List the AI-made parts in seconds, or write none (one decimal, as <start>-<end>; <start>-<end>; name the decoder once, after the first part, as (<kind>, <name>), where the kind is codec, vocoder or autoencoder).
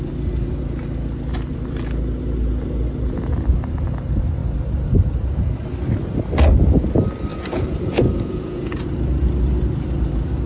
7.3-8.8 (vocoder, Vocos)